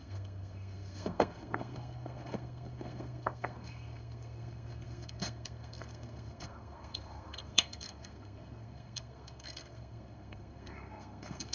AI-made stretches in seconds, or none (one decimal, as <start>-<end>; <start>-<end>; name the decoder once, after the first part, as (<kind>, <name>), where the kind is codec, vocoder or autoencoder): 0.0-11.5 (codec, SNAC)